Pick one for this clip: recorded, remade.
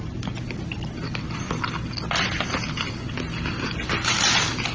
recorded